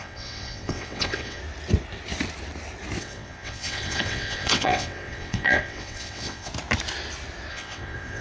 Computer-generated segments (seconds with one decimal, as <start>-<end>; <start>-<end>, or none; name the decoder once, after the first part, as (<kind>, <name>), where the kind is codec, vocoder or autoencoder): 0.0-1.4 (vocoder, WaveNeXt); 3.0-6.5; 7.5-8.2